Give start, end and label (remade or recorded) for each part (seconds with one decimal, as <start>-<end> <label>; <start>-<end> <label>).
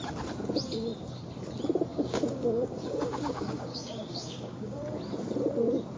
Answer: 0.0-1.9 recorded; 1.9-5.0 remade; 5.0-6.0 recorded